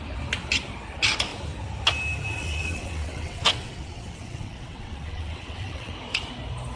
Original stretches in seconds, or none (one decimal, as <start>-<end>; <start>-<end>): 0.0-2.3; 5.9-6.8